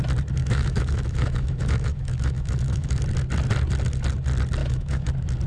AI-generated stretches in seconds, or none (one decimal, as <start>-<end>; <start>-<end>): 0.4-3.0; 4.6-5.1